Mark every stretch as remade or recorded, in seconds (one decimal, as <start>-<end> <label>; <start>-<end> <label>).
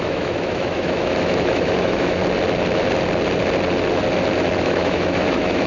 0.0-2.2 remade; 2.2-4.6 recorded; 4.6-5.7 remade